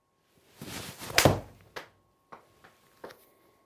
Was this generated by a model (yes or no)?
no